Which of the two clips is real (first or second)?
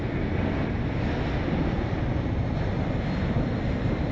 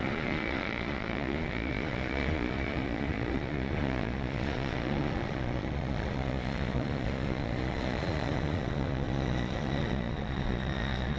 first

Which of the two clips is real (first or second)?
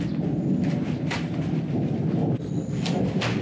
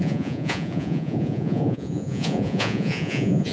first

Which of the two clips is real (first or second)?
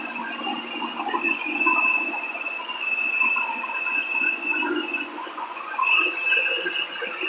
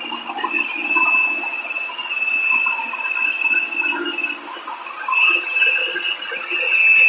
second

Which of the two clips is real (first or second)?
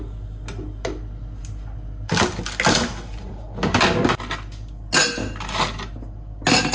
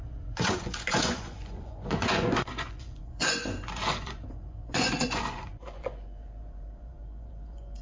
first